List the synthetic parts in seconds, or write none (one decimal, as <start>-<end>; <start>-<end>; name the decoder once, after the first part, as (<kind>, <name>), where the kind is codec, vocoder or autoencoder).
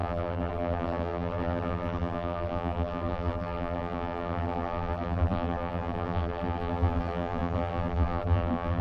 0.0-8.8 (vocoder, BigVGAN v2)